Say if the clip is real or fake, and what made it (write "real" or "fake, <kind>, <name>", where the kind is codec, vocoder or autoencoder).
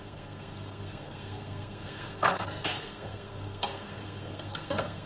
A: fake, codec, SNAC